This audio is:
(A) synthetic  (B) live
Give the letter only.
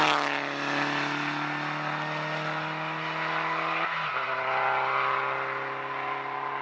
B